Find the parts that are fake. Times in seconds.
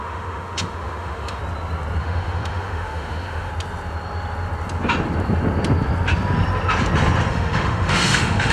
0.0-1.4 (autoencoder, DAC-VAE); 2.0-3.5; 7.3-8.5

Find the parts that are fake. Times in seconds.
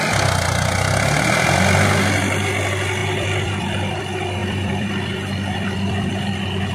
3.0-4.0 (vocoder, BigVGAN v2); 4.4-6.1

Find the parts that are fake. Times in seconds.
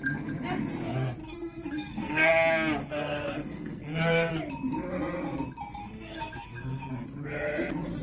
1.2-2.3 (codec, SNAC); 2.8-4.3; 5.8-6.9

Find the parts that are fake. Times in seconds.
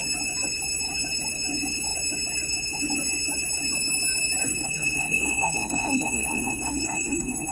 4.4-7.5 (codec, SNAC)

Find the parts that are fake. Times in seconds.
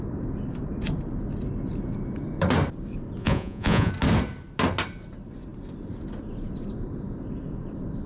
3.2-3.9 (vocoder, Vocos)